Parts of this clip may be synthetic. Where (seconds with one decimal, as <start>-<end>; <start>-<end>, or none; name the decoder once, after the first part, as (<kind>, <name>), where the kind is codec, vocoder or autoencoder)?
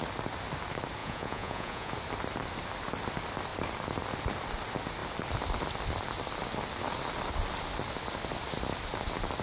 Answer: 1.0-1.9 (vocoder, Vocos)